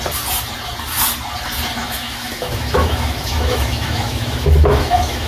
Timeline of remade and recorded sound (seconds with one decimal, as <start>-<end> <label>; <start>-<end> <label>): 0.0-1.8 recorded; 1.8-5.3 remade